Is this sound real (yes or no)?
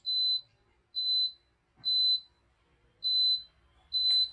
yes